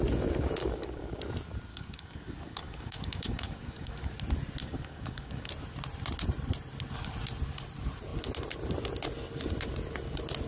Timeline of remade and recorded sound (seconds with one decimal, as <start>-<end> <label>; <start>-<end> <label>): 0.0-0.6 recorded; 0.6-1.2 remade; 1.2-1.7 recorded; 1.7-4.1 remade; 4.1-4.6 recorded; 4.6-5.5 remade; 5.5-10.5 recorded